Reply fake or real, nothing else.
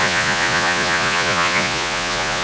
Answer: fake